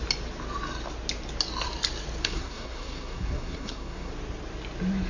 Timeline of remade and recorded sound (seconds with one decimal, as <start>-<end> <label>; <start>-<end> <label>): 0.0-2.2 recorded; 2.2-4.1 remade; 4.1-5.1 recorded